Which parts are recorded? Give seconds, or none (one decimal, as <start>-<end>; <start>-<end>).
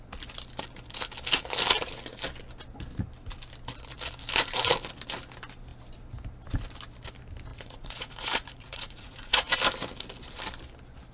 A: 0.0-7.5; 9.5-11.1